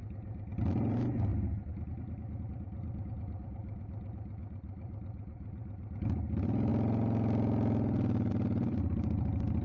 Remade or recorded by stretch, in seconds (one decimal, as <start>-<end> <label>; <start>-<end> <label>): 0.0-0.7 recorded; 0.7-1.3 remade; 1.3-2.4 recorded; 2.4-3.6 remade; 3.6-4.5 recorded; 4.5-6.7 remade; 6.7-8.3 recorded; 8.3-9.6 remade